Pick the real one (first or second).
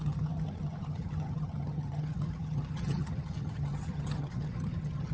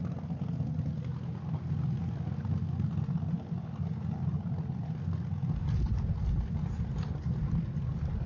second